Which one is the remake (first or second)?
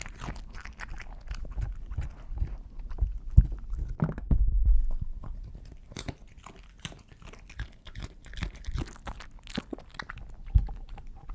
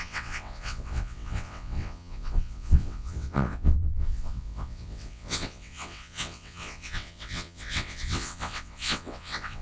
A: second